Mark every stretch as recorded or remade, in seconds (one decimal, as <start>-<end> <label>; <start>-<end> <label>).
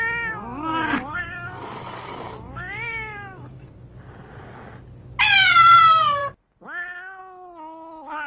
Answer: 0.0-0.7 recorded; 0.7-3.7 remade; 3.7-8.3 recorded